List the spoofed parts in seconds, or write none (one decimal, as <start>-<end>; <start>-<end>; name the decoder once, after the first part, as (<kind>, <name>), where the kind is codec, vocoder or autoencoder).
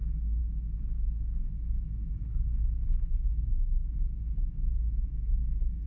0.0-0.4 (autoencoder, DAC-VAE); 1.4-5.9